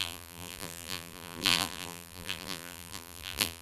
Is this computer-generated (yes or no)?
yes